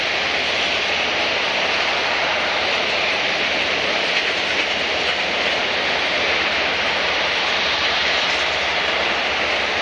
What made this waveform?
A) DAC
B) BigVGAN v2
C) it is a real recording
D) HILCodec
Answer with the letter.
B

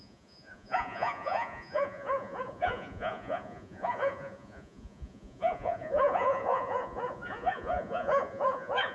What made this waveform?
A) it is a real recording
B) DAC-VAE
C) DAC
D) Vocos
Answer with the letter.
D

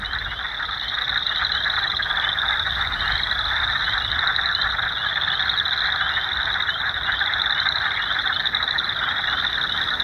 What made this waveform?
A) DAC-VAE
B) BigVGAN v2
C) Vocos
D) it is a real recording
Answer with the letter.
D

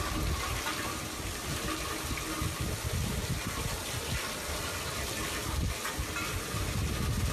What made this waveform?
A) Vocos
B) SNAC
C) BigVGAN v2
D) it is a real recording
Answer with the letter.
D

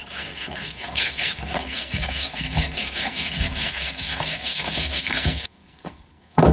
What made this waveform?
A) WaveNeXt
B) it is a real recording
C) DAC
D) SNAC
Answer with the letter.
D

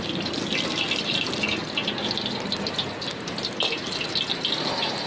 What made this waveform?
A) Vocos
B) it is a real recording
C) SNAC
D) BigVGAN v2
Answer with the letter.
B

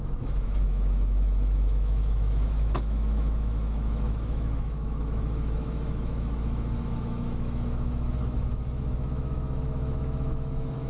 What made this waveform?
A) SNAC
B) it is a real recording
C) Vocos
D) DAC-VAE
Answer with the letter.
D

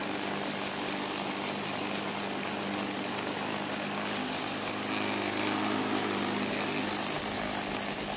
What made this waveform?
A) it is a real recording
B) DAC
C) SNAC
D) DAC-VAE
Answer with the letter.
A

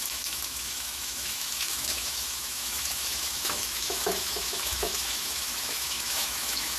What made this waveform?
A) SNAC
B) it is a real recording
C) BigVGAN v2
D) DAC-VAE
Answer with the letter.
D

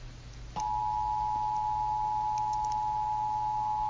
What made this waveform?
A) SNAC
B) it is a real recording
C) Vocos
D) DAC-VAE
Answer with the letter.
B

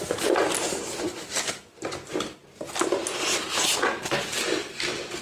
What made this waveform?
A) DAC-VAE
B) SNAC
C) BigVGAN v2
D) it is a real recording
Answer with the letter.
D